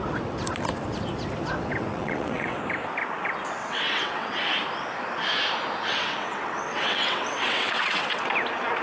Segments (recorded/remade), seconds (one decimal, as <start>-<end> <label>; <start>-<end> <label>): 0.0-1.9 recorded; 1.9-2.6 remade; 2.6-3.6 recorded; 3.6-4.3 remade; 4.3-5.9 recorded; 5.9-8.3 remade; 8.3-8.8 recorded